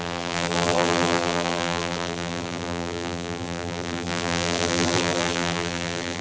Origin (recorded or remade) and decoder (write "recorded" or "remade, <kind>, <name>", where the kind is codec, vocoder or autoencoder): remade, vocoder, BigVGAN v2